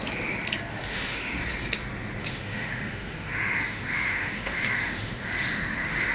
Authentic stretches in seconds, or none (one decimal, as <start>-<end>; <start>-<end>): 0.0-0.7; 1.4-2.2